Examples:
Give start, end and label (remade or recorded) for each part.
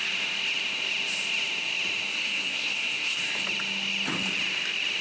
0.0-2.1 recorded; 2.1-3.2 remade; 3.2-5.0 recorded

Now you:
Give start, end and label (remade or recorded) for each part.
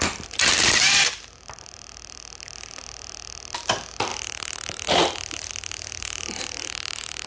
0.0-7.3 recorded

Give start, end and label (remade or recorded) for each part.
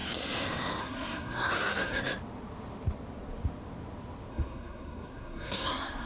0.0-0.8 recorded; 0.8-2.0 remade; 2.0-4.3 recorded; 4.3-6.1 remade